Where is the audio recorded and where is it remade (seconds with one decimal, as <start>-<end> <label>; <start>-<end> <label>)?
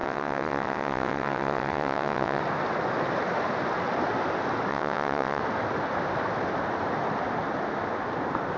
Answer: 0.0-2.4 remade; 2.4-4.7 recorded; 4.7-5.4 remade; 5.4-8.6 recorded